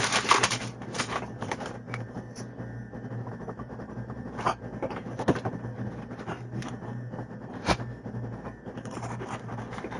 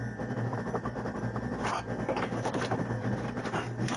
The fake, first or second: first